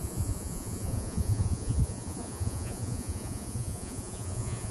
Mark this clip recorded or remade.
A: remade